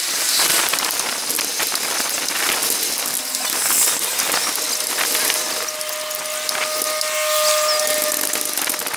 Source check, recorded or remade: recorded